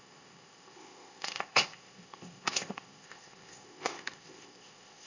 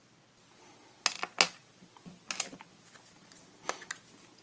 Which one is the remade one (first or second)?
first